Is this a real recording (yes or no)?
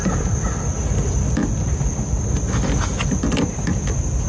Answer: yes